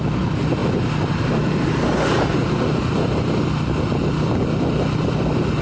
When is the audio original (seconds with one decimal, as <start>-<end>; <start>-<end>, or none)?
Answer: 0.0-5.6